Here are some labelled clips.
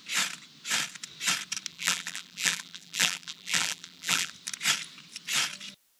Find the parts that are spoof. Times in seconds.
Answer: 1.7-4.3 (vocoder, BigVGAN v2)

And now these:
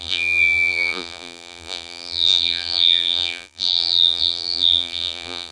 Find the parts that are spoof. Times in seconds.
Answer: 0.0-5.5 (vocoder, BigVGAN v2)

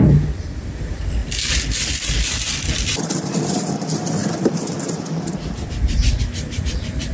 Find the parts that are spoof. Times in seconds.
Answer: 0.0-1.2 (vocoder, BigVGAN v2); 3.0-7.1

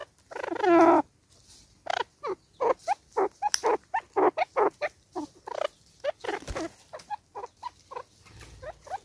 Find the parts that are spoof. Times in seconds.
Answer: none

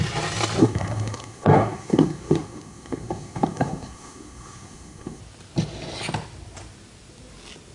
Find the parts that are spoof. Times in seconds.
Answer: 0.6-5.2 (codec, SNAC)

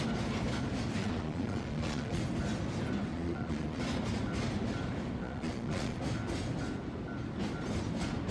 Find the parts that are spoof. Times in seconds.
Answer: 1.0-2.2 (vocoder, Vocos); 3.1-3.8; 5.2-6.0